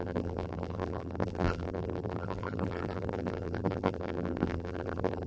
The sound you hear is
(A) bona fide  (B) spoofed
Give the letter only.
B